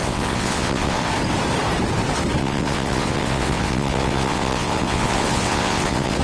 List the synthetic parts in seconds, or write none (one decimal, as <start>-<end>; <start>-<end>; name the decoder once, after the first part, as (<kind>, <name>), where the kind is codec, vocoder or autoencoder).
0.0-1.1 (vocoder, WaveNeXt); 2.4-6.2